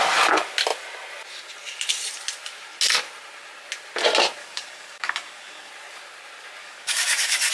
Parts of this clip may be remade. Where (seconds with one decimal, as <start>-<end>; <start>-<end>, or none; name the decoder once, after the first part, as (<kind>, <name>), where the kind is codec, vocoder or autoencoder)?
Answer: 4.4-5.7 (codec, DAC); 6.6-7.5